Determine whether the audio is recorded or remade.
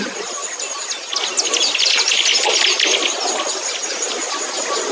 recorded